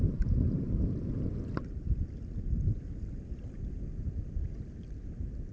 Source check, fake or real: real